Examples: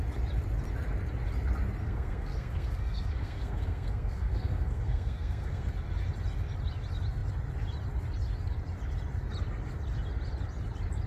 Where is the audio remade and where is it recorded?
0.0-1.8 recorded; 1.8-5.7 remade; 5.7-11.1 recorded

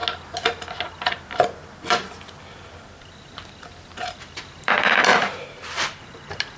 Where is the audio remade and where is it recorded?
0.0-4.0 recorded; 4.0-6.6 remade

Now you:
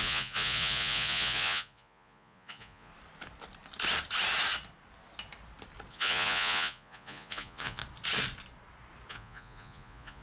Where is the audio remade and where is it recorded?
0.0-2.9 remade; 2.9-5.9 recorded; 5.9-7.8 remade; 7.8-9.1 recorded; 9.1-10.2 remade